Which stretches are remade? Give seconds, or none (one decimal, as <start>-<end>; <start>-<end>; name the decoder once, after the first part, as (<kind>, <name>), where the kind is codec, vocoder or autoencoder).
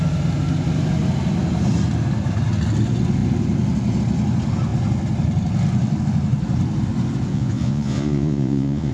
7.3-8.9 (vocoder, Vocos)